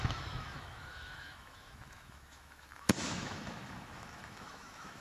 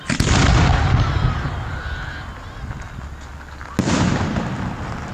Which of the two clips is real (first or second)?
second